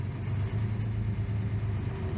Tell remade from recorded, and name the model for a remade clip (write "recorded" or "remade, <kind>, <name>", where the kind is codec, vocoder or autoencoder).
recorded